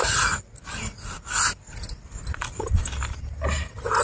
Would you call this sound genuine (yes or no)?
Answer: yes